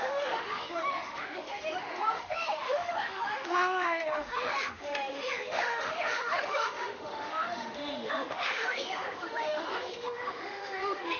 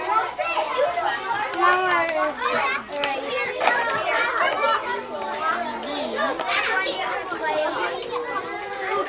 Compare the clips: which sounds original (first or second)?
second